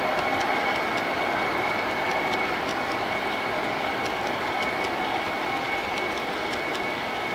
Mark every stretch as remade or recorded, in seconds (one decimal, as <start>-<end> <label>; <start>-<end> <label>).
0.0-7.3 recorded